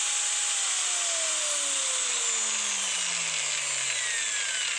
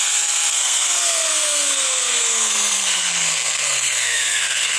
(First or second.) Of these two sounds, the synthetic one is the second